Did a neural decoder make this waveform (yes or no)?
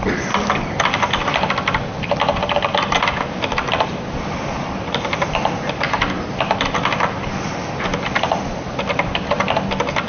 no